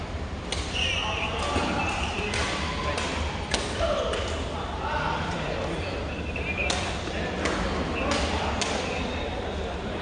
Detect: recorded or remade recorded